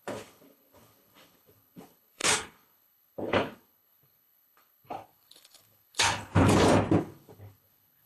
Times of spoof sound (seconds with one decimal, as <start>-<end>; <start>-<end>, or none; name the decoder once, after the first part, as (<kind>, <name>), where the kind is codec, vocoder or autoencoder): 0.0-6.3 (codec, HILCodec); 7.0-8.1